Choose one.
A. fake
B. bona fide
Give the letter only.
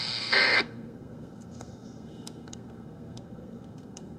A